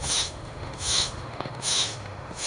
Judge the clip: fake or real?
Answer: fake